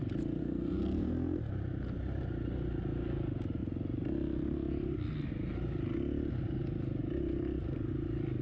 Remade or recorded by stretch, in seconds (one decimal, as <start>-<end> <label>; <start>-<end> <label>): 0.0-0.4 recorded; 0.4-1.5 remade; 1.5-8.4 recorded